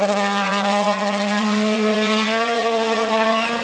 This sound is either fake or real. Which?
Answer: fake